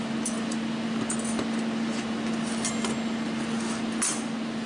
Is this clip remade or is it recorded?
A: recorded